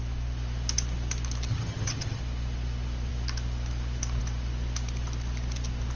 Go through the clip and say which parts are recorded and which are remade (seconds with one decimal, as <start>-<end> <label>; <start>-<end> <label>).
0.0-1.5 recorded; 1.5-2.2 remade; 2.2-6.0 recorded